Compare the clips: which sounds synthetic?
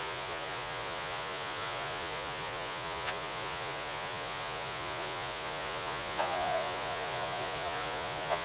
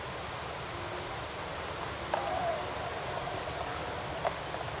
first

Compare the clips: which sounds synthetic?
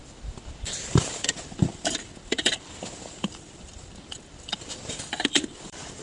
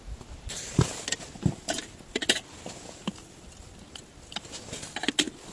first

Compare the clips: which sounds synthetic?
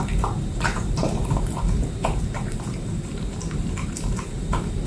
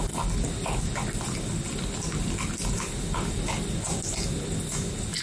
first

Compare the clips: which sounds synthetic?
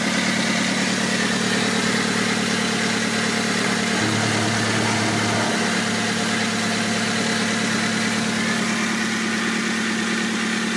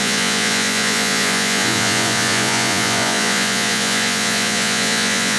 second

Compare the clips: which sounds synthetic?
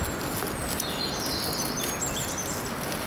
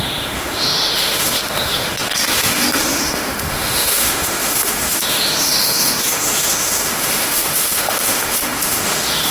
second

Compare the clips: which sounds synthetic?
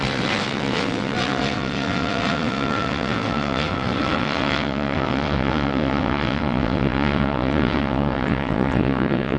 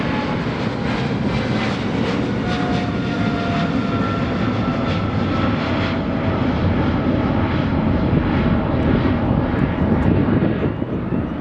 first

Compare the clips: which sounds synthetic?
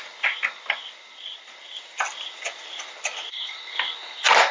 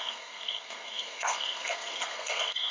second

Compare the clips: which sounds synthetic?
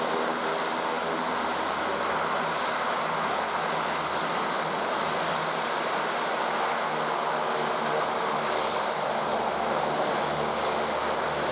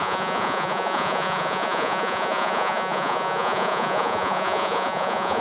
second